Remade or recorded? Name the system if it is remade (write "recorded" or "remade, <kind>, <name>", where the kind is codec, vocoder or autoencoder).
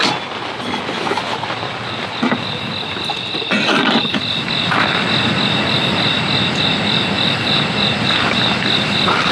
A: recorded